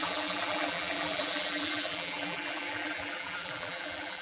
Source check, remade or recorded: remade